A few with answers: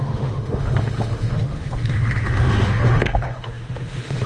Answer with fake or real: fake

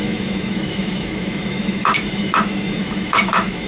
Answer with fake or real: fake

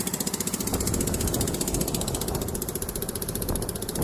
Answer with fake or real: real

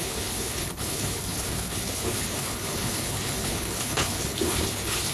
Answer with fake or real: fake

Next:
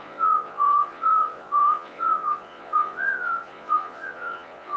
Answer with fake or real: fake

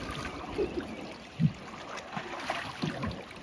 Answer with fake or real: real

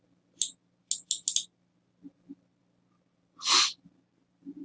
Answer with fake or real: real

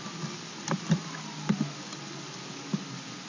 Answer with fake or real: real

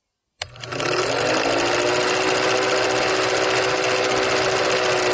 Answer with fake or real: real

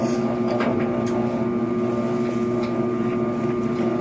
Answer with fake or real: real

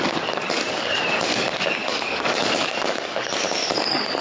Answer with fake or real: fake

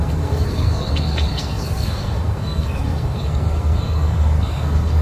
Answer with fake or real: fake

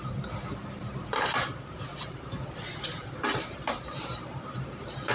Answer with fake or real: fake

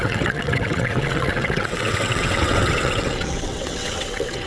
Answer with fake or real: fake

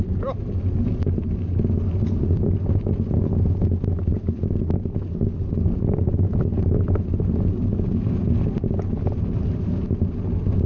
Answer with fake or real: real